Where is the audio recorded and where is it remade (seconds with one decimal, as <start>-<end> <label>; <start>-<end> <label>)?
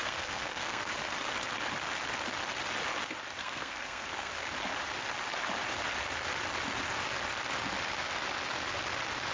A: 0.0-0.9 remade; 0.9-3.4 recorded; 3.4-4.3 remade; 4.3-9.3 recorded